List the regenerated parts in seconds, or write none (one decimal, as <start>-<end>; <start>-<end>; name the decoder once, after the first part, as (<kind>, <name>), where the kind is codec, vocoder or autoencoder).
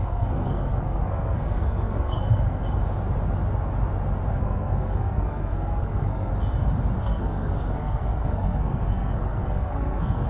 0.0-2.6 (codec, SNAC); 4.3-6.3; 7.0-10.3